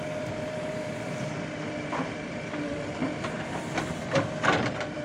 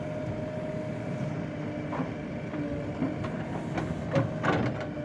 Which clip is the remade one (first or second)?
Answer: first